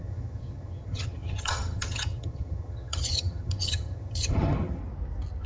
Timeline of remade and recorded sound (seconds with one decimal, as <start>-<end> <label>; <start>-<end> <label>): 0.0-4.8 remade; 4.8-5.5 recorded